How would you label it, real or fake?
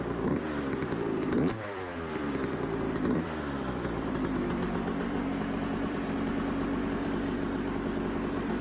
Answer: fake